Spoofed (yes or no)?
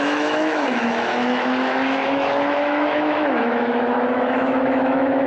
yes